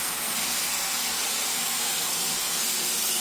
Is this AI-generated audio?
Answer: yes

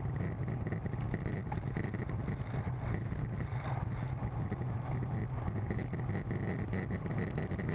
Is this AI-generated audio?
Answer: no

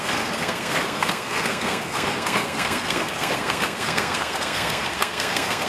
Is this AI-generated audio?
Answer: yes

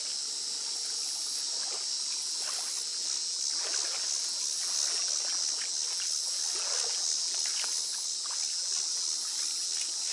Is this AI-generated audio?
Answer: no